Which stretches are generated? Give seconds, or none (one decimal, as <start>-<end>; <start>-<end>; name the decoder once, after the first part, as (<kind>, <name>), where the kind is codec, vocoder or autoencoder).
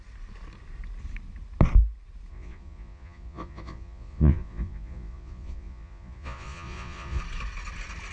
2.3-7.2 (vocoder, Vocos)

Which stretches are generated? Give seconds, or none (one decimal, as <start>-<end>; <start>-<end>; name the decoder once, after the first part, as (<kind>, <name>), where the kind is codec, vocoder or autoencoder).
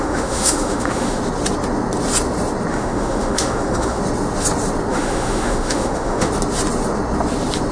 0.0-1.2 (autoencoder, DAC-VAE); 2.7-4.0; 4.9-6.3